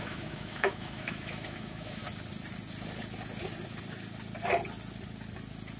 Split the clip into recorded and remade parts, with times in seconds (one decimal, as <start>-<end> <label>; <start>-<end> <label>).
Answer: 0.0-2.0 remade; 2.0-5.8 recorded